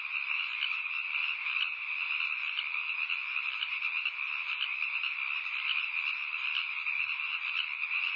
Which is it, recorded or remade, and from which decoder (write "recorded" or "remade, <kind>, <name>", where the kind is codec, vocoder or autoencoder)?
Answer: recorded